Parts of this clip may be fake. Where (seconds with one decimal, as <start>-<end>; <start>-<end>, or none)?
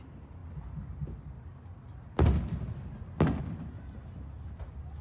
none